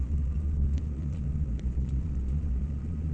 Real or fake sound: fake